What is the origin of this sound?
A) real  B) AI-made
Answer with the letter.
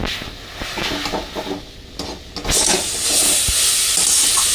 A